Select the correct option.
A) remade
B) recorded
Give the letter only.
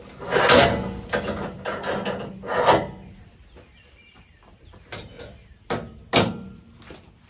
B